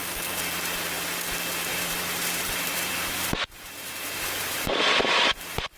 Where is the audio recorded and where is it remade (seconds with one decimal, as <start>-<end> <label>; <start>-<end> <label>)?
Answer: 0.0-1.7 recorded; 1.7-5.2 remade; 5.2-5.8 recorded